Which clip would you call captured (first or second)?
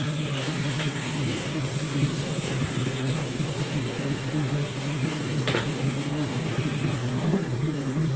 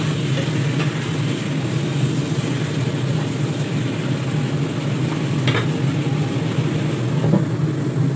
second